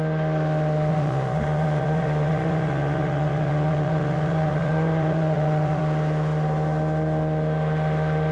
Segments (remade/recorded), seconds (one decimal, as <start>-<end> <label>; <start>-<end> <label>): 0.0-0.9 recorded; 0.9-5.8 remade; 5.8-8.3 recorded